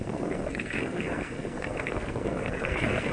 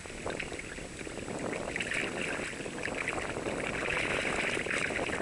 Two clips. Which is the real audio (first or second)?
second